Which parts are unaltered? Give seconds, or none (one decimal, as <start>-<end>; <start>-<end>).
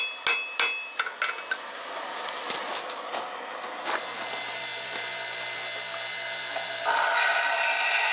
0.0-8.1